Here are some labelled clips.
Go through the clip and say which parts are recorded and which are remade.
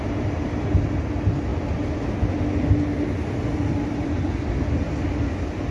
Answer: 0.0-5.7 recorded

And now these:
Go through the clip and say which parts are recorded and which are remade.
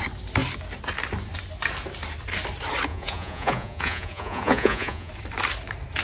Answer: 0.0-2.9 recorded; 2.9-5.1 remade; 5.1-6.0 recorded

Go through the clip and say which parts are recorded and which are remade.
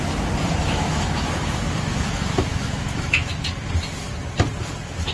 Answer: 0.0-0.6 recorded; 0.6-3.7 remade; 3.7-5.1 recorded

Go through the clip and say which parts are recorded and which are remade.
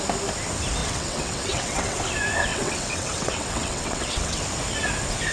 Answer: 0.0-0.8 recorded; 0.8-2.0 remade; 2.0-2.5 recorded; 2.5-4.4 remade; 4.4-5.3 recorded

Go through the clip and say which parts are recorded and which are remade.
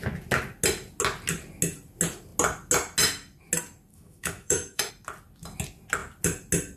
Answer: 0.0-3.9 recorded; 3.9-4.9 remade; 4.9-6.8 recorded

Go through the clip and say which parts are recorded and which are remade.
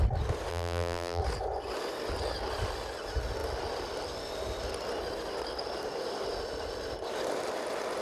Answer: 0.0-0.5 recorded; 0.5-1.2 remade; 1.2-8.0 recorded